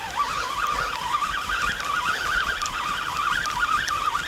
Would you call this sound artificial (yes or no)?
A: yes